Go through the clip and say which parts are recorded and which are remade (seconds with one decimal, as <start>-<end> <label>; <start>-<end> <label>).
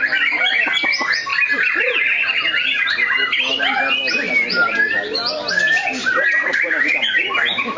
0.0-1.3 remade; 1.3-5.5 recorded; 5.5-7.8 remade